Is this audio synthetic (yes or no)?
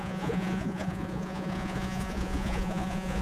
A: yes